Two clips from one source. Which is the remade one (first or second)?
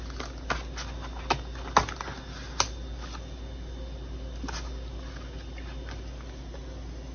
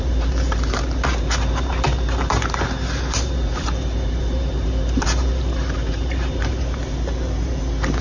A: second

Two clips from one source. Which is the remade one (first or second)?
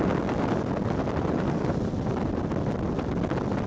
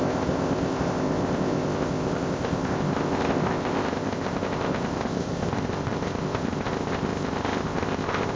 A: second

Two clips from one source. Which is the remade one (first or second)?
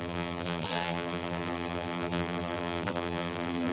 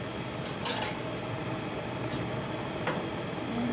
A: first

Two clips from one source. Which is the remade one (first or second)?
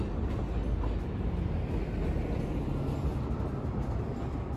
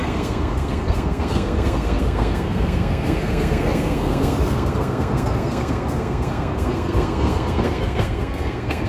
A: second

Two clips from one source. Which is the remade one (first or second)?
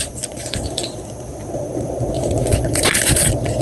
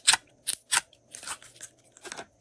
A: first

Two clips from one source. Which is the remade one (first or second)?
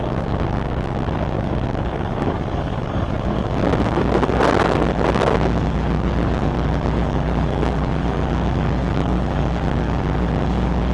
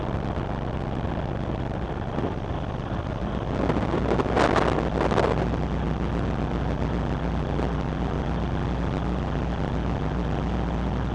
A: first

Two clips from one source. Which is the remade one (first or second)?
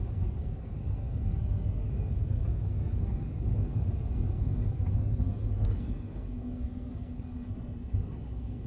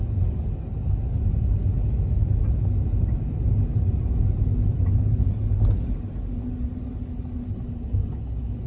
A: first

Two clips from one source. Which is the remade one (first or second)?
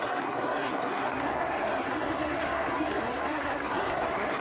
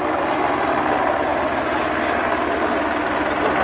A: first